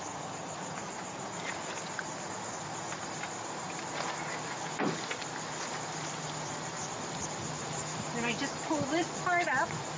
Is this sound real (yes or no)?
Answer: no